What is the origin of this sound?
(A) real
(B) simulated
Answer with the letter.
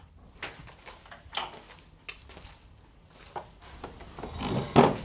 A